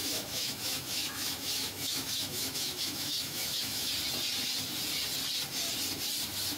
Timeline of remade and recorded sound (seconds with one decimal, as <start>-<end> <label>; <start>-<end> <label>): 0.0-3.9 remade; 3.9-6.6 recorded